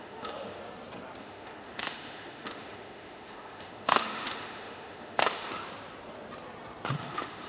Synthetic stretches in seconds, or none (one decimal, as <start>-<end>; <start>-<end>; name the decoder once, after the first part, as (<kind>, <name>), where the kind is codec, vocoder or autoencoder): 0.0-0.6 (autoencoder, DAC-VAE); 1.2-5.5; 6.9-7.5